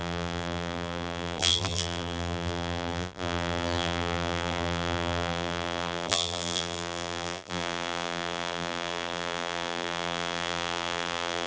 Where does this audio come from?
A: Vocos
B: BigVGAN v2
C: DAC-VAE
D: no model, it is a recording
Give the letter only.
B